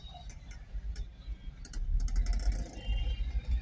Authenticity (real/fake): real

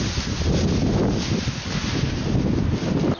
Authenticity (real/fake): real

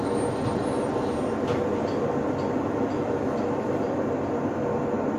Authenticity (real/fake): real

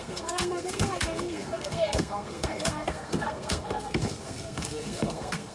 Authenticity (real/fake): fake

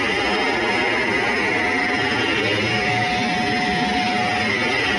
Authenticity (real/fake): real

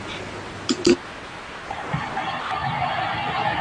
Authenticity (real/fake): real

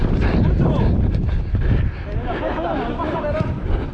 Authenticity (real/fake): real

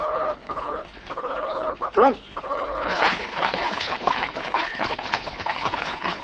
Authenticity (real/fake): fake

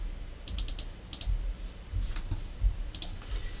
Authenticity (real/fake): real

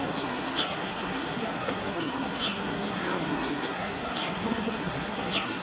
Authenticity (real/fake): fake